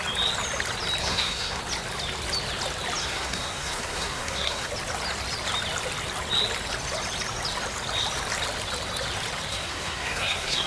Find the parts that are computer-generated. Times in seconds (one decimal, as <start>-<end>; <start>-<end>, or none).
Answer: 1.0-1.6; 3.0-4.7; 9.5-10.7

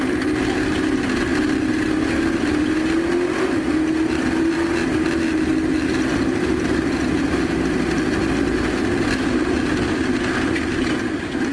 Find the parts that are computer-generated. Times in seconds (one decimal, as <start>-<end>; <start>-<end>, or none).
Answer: none

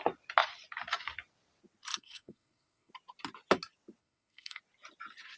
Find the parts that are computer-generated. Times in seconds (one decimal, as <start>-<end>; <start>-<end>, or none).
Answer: 1.9-2.9; 4.0-4.6

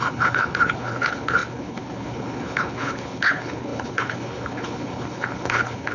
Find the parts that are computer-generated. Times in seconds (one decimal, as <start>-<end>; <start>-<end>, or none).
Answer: 0.0-5.9

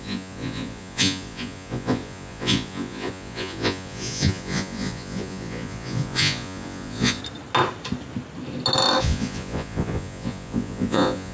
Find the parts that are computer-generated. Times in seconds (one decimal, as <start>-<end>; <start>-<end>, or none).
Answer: 0.0-7.2; 9.0-11.3

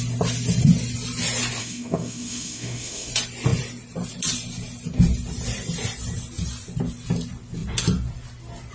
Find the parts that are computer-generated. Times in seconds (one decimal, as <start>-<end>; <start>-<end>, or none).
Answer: 1.6-3.1

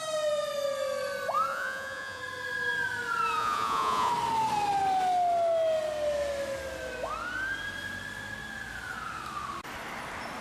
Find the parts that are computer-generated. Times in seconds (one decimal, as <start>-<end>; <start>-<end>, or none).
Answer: 1.5-2.2; 3.4-4.1

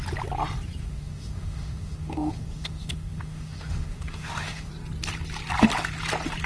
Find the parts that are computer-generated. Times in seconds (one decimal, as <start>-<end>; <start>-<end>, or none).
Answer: 0.8-4.7